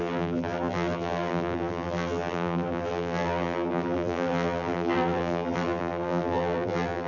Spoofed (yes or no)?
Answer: yes